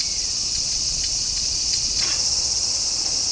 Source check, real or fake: fake